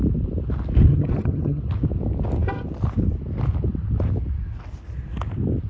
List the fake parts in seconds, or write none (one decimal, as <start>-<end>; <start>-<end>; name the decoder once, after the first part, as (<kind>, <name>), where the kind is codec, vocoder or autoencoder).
0.9-1.6 (vocoder, HiFi-GAN)